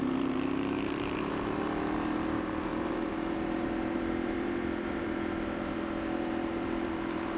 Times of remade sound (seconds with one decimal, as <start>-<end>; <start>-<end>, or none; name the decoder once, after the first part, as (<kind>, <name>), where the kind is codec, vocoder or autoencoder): 0.0-7.4 (vocoder, BigVGAN v2)